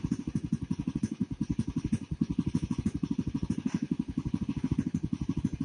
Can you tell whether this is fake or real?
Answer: fake